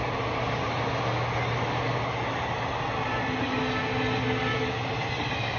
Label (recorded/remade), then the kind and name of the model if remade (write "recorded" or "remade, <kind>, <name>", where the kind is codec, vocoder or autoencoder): recorded